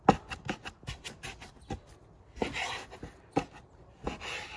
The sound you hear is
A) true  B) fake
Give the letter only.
A